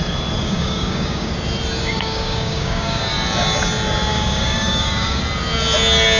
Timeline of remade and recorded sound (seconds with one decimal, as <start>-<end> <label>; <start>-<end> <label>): 0.0-0.4 recorded; 0.4-1.3 remade; 1.3-1.8 recorded; 1.8-3.0 remade; 3.0-4.1 recorded; 4.1-5.2 remade; 5.2-6.2 recorded